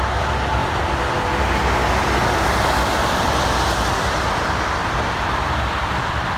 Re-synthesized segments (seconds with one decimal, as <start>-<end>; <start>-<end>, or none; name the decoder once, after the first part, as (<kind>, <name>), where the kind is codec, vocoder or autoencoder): 0.6-1.2 (vocoder, BigVGAN v2); 4.8-5.5